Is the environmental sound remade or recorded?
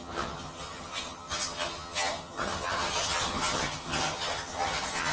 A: remade